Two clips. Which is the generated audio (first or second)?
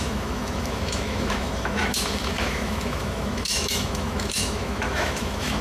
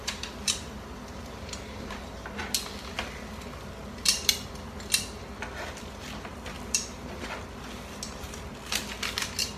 first